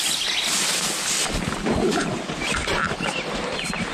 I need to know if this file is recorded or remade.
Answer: recorded